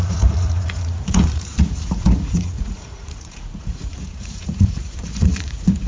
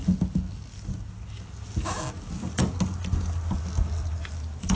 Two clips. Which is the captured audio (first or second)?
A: second